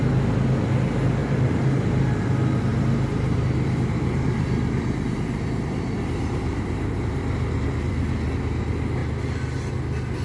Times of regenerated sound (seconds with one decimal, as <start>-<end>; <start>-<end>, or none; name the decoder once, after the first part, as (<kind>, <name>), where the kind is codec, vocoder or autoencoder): 1.2-2.0 (vocoder, BigVGAN v2); 2.7-7.8